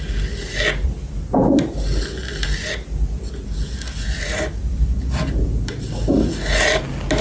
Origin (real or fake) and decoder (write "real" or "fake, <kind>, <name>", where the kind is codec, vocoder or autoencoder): real